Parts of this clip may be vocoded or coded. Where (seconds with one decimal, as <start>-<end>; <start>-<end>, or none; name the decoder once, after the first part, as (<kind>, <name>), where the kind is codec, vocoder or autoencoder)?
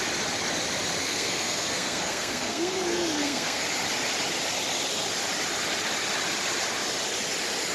1.0-3.6 (codec, SNAC)